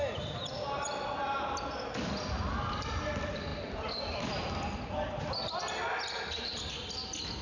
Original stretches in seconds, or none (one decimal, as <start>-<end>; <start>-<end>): 0.0-7.4